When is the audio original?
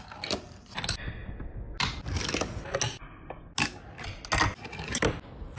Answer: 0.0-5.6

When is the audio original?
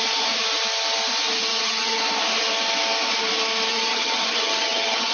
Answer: 0.0-1.5; 2.0-3.7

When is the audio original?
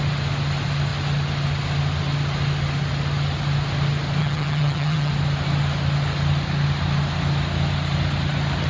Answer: 0.0-4.2; 5.1-8.7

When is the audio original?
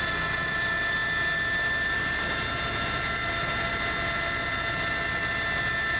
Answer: 0.0-6.0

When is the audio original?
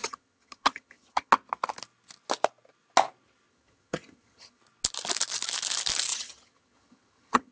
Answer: 1.3-3.5; 4.6-6.1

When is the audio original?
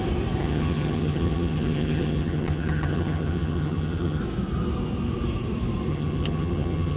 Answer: 0.0-0.4; 4.2-5.9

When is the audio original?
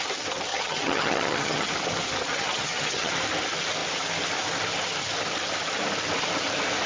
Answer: 0.0-0.5; 1.7-2.3; 3.1-6.9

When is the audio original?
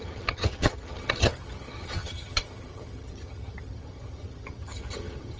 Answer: none